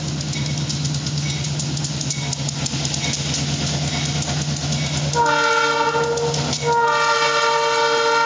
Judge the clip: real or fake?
real